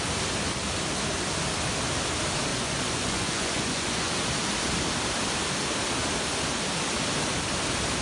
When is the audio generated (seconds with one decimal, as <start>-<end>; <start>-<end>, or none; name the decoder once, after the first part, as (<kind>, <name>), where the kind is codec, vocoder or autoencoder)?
2.5-4.1 (vocoder, Vocos)